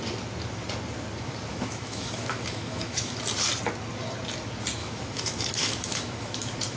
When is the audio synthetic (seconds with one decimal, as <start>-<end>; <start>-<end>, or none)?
1.5-3.1; 4.8-6.8